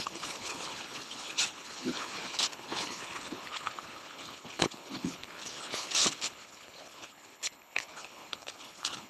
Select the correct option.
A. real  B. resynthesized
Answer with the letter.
B